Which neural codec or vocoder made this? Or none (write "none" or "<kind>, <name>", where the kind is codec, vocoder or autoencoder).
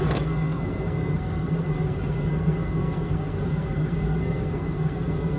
codec, SNAC